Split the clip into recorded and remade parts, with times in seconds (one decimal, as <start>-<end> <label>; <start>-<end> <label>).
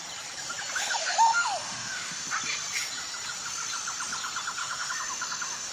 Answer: 0.0-0.8 recorded; 0.8-2.3 remade; 2.3-4.6 recorded; 4.6-5.7 remade